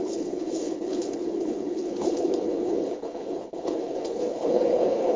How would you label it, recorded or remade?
remade